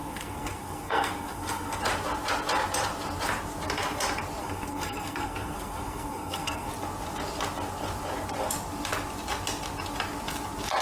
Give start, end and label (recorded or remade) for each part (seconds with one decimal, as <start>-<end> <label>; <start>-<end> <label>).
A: 0.0-1.8 remade; 1.8-4.4 recorded; 4.4-6.7 remade; 6.7-10.8 recorded